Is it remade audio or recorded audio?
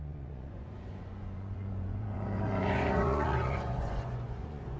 remade